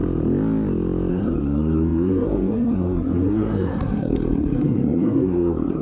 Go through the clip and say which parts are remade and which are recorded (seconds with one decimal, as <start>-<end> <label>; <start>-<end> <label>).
0.0-1.1 recorded; 1.1-5.8 remade